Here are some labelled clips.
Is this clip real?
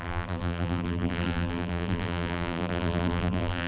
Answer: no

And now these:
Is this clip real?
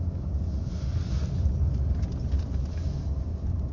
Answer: yes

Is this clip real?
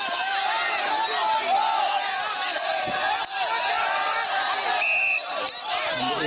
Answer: yes